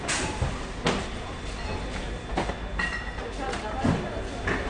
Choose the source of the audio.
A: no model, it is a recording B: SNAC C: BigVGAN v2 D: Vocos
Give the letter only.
A